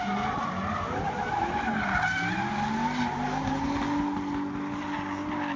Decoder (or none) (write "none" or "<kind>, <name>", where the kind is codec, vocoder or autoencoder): none